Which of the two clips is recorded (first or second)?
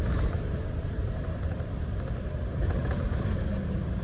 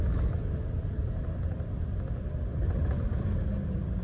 second